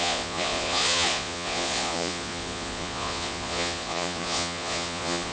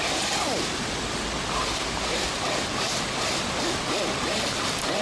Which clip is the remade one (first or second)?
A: first